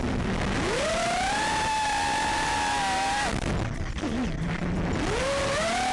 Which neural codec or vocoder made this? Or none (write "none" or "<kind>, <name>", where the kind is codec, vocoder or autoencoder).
none